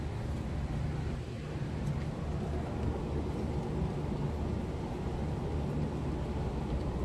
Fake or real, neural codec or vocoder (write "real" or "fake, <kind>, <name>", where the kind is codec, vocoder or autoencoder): real